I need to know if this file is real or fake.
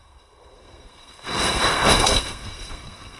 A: fake